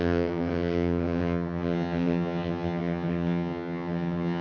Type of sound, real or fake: fake